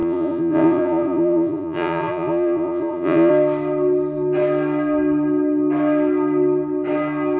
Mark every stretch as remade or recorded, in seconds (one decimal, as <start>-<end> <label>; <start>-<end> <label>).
0.0-3.3 remade; 3.3-7.4 recorded